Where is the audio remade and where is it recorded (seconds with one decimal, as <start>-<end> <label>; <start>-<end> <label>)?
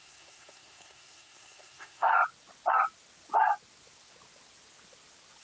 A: 0.0-2.1 remade; 2.1-5.4 recorded